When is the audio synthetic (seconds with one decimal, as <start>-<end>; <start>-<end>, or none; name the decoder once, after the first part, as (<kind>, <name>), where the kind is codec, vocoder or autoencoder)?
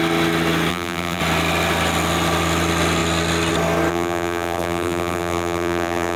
0.7-1.2 (vocoder, BigVGAN v2); 3.9-6.2